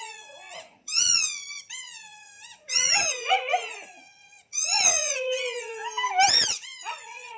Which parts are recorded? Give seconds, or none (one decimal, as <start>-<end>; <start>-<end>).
5.8-6.3